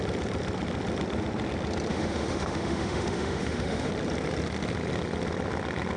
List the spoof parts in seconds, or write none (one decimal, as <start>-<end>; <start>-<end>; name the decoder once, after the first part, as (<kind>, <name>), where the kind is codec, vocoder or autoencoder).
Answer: 1.9-3.9 (autoencoder, DAC-VAE)